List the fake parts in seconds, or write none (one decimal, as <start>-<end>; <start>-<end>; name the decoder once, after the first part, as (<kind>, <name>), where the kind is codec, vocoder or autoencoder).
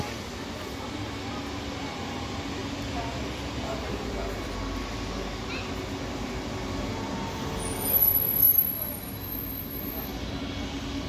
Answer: none